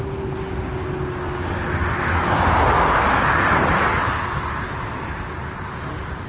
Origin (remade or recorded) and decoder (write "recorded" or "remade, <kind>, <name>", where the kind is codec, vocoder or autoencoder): recorded